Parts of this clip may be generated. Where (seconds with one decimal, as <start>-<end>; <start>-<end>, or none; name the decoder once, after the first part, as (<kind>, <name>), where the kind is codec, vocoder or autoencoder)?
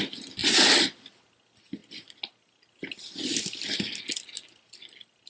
none